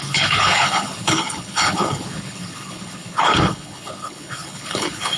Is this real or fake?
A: fake